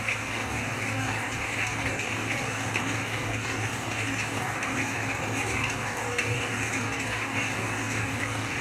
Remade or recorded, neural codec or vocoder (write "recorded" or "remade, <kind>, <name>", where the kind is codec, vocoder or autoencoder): remade, codec, DAC